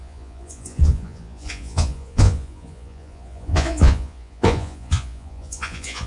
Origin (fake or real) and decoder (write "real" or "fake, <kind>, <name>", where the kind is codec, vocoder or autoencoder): fake, vocoder, Vocos